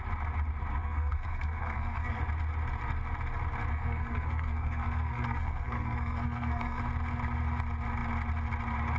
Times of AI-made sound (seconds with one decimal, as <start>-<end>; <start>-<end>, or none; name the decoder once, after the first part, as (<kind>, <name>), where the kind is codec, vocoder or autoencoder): 0.8-2.2 (codec, SNAC); 3.7-6.8